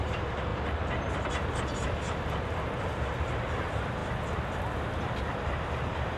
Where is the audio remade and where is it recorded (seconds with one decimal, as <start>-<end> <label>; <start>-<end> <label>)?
0.0-4.0 remade; 4.0-5.2 recorded; 5.2-6.2 remade